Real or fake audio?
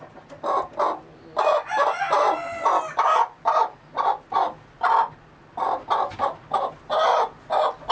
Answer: real